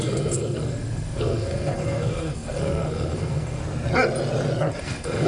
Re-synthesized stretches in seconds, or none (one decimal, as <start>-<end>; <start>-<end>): 0.0-3.6; 4.8-5.3